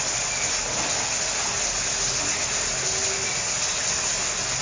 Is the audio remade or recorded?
recorded